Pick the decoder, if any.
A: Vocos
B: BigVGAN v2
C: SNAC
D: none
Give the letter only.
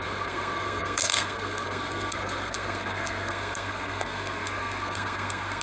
C